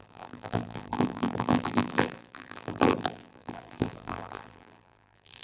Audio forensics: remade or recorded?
remade